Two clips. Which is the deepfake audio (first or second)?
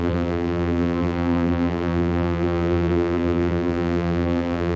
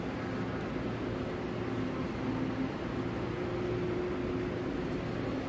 first